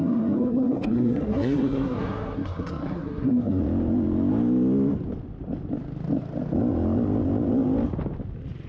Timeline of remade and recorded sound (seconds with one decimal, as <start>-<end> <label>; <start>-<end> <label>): 0.0-3.6 remade; 3.6-8.7 recorded